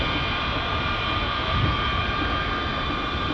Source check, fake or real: real